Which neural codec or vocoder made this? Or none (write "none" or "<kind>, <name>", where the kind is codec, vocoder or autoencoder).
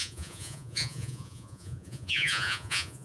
vocoder, Vocos